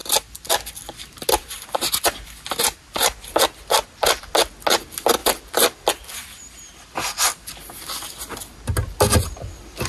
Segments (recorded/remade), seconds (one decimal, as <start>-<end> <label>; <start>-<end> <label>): 0.0-9.9 recorded